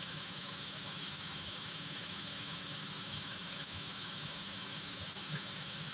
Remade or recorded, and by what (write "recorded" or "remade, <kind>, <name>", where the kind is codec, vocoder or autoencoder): remade, autoencoder, DAC-VAE